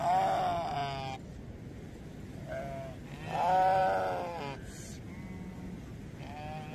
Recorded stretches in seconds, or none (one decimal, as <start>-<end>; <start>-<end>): 0.0-6.7